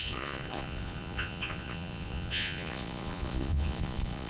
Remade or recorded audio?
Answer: remade